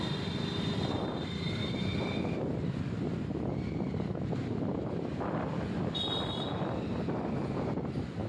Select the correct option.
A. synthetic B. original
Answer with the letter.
B